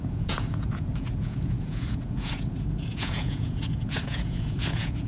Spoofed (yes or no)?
yes